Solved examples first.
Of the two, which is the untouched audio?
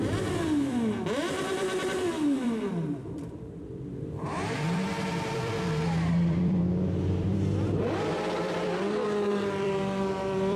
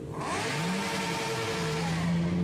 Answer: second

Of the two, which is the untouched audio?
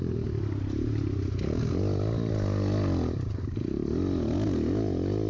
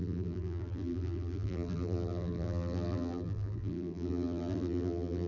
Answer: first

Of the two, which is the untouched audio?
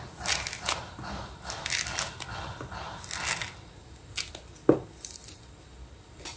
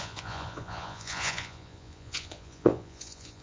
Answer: first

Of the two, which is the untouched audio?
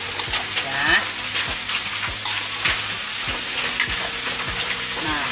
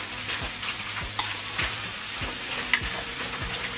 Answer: first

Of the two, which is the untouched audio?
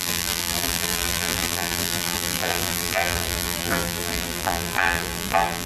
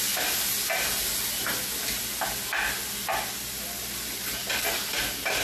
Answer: second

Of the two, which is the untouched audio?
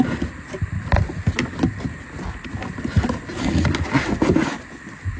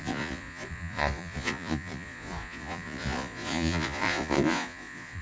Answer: first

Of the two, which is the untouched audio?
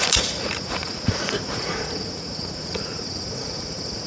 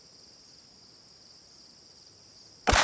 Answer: second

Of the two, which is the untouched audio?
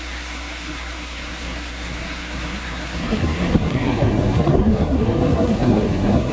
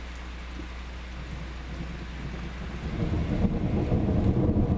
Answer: second